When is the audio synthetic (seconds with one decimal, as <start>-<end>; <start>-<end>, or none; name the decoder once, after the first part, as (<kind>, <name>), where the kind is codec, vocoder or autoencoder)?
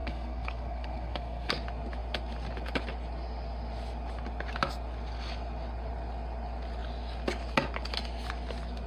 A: 0.0-1.5 (codec, SNAC)